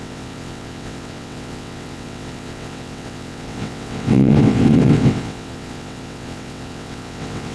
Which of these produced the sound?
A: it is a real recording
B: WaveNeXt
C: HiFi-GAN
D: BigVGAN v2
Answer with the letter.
B